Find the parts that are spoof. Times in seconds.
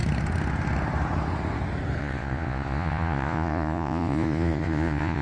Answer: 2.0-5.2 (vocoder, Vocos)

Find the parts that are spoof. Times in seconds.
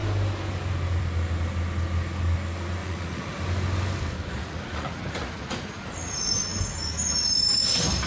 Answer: 2.8-3.4 (vocoder, Vocos); 4.4-6.4